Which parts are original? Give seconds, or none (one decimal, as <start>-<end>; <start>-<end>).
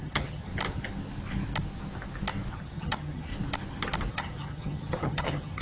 0.5-2.5; 3.3-4.1